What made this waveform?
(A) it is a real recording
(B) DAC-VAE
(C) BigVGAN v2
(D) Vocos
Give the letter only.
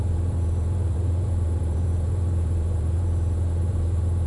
C